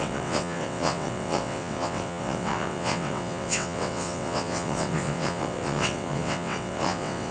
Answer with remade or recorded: remade